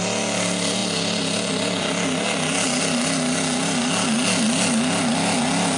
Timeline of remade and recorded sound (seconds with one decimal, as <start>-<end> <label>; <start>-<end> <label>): 0.0-5.8 recorded